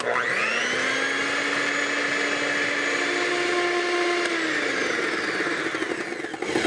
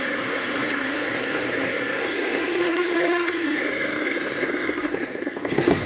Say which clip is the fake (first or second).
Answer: second